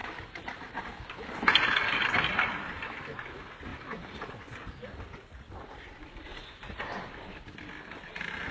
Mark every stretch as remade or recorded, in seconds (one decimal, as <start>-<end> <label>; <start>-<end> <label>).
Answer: 0.0-6.3 recorded; 6.3-7.4 remade; 7.4-8.5 recorded